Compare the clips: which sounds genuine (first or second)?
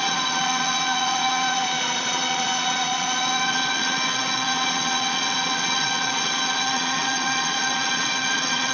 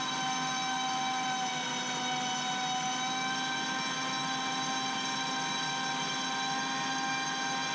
second